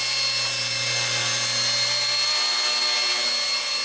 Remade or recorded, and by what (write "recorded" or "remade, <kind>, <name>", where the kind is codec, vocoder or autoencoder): recorded